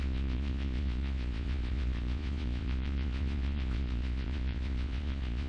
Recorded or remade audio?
remade